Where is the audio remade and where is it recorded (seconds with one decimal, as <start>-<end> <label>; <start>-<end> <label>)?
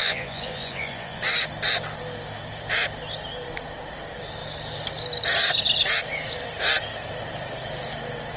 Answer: 0.0-1.2 remade; 1.2-8.4 recorded